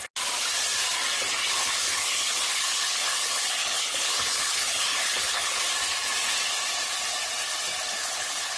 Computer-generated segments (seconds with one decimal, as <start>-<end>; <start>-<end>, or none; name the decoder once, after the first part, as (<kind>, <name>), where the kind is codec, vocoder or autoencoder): 1.4-5.6 (codec, HILCodec); 8.0-8.6